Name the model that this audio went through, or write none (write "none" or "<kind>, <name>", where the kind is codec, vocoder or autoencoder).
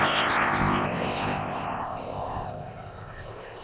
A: codec, ZipCodec